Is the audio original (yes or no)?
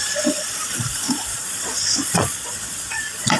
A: no